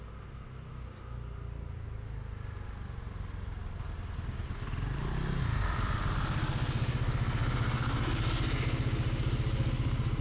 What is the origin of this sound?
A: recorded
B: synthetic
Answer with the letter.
A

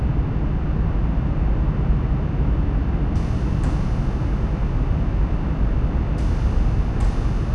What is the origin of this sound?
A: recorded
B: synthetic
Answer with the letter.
A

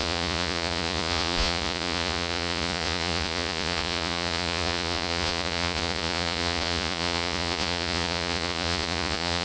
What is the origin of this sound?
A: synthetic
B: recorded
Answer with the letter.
A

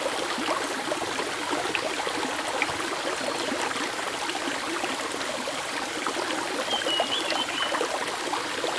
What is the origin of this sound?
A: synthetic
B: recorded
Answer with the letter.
B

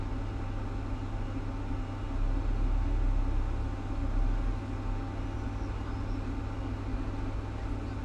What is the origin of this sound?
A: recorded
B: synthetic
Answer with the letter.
A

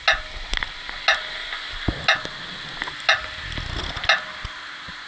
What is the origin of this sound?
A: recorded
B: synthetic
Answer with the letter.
A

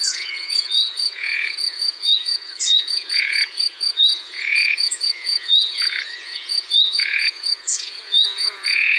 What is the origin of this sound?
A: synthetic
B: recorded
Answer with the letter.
A